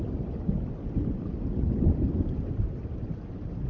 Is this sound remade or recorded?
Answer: recorded